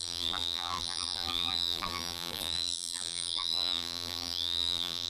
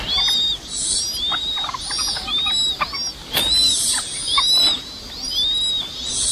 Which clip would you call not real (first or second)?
first